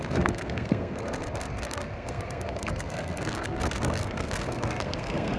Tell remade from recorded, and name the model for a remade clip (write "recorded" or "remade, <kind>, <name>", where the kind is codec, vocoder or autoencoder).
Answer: remade, codec, SNAC